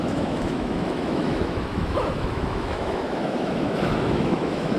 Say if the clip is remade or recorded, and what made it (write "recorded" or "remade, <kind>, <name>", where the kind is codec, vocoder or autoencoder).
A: remade, autoencoder, DAC-VAE